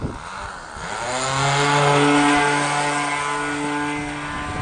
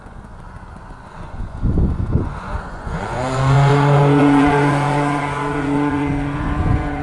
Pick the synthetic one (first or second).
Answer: second